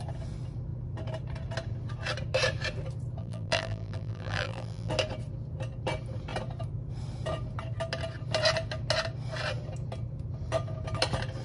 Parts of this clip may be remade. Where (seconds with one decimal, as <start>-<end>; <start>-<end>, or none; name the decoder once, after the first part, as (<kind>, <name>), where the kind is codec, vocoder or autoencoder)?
3.2-4.9 (vocoder, BigVGAN v2)